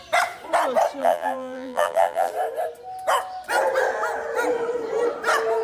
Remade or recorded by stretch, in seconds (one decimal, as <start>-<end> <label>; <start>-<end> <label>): 0.0-1.0 recorded; 1.0-2.3 remade; 2.3-5.6 recorded